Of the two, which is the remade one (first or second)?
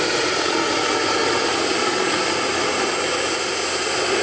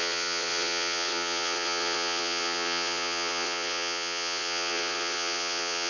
second